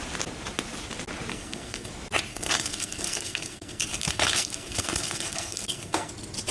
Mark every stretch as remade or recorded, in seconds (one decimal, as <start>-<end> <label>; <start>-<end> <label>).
0.0-1.3 recorded; 1.3-1.9 remade; 1.9-2.3 recorded; 2.3-6.1 remade; 6.1-6.5 recorded